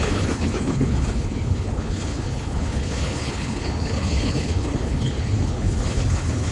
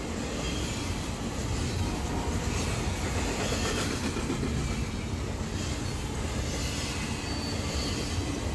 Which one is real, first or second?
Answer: second